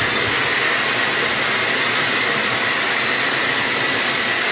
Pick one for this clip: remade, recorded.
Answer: recorded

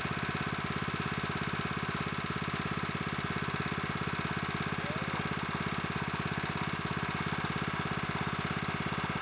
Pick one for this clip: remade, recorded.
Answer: recorded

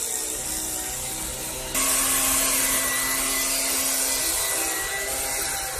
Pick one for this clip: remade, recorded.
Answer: recorded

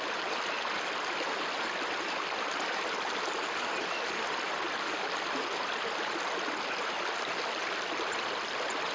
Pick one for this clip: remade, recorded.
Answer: recorded